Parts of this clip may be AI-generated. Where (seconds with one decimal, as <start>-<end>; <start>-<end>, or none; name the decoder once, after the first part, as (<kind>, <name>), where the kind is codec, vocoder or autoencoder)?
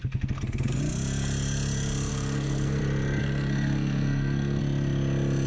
0.0-0.8 (codec, SNAC); 2.1-2.8; 3.2-4.6